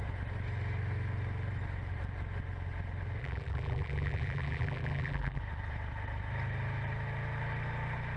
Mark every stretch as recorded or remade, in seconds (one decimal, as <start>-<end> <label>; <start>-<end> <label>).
0.0-3.2 recorded; 3.2-5.4 remade; 5.4-8.2 recorded